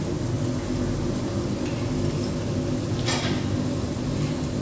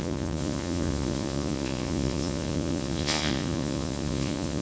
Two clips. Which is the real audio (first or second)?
first